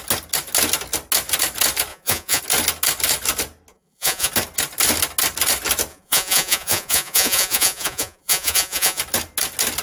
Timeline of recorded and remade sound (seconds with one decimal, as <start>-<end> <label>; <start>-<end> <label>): 0.0-1.9 recorded; 1.9-2.4 remade; 2.4-3.7 recorded; 3.7-4.3 remade; 4.3-5.9 recorded; 5.9-9.0 remade; 9.0-9.8 recorded